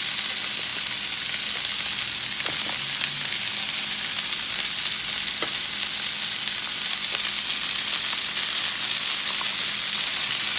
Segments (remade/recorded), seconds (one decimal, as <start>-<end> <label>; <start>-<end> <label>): 0.0-10.6 recorded